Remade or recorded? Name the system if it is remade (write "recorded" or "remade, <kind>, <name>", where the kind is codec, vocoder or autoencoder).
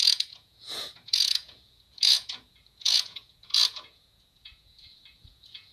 remade, vocoder, Vocos